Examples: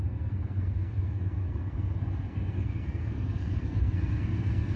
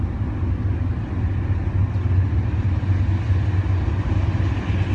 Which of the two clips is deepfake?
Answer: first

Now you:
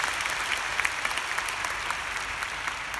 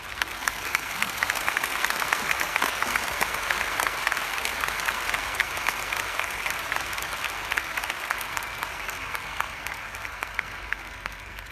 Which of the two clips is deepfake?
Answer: second